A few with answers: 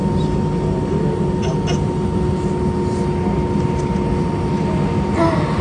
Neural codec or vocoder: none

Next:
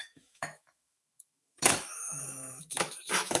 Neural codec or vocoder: autoencoder, DAC-VAE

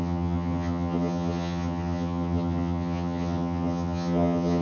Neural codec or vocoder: vocoder, HiFi-GAN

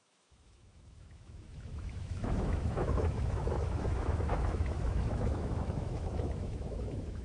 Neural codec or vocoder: autoencoder, DAC-VAE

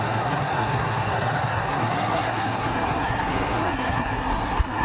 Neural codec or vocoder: codec, SNAC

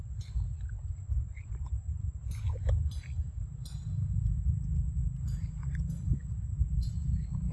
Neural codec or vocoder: none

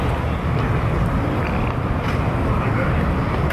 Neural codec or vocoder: none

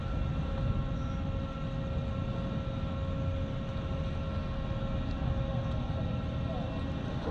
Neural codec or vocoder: none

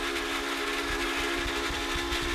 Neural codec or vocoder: none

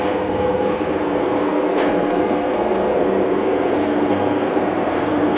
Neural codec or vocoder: codec, SNAC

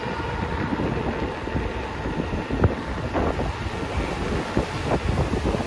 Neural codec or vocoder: none